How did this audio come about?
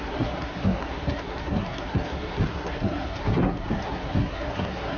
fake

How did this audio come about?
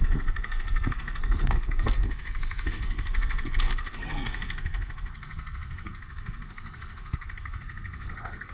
fake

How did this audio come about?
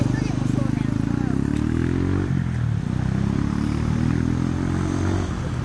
real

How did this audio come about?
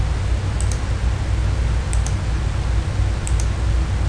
real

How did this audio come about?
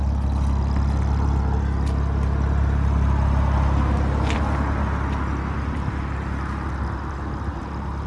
real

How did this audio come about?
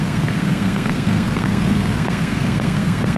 fake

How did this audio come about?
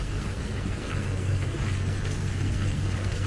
fake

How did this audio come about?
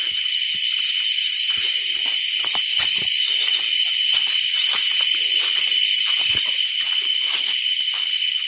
real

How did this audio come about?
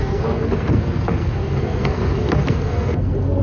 fake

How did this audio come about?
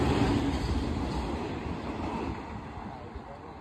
real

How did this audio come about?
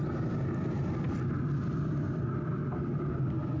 real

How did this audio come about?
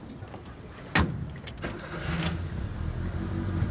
real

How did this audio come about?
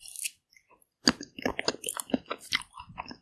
real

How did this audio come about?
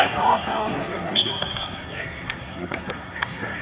fake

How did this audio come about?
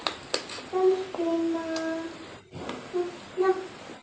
real